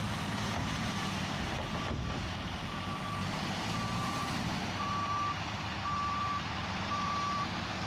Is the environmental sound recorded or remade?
remade